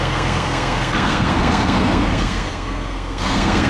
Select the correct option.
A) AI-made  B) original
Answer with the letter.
A